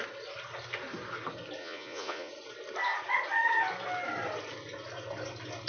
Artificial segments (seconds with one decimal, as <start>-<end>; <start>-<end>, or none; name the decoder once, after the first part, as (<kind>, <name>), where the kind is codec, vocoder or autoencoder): 1.6-2.3 (vocoder, Vocos)